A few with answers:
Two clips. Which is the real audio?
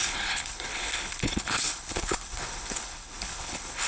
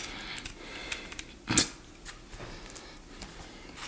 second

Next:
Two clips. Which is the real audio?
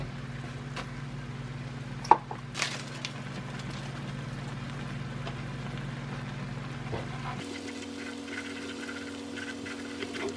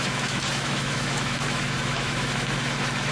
first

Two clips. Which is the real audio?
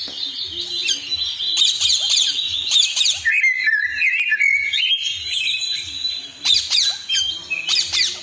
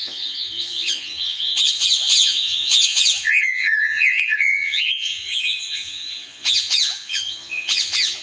first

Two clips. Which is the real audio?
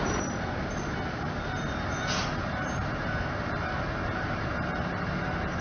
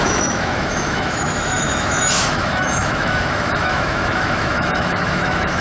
first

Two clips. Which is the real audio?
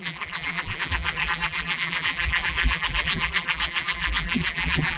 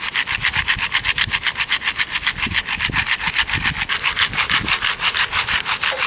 second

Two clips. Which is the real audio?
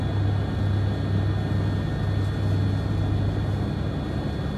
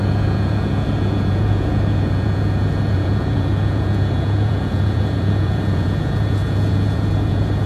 first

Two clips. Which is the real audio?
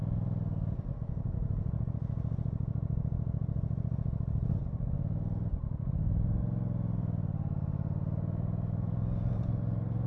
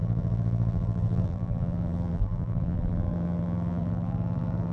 first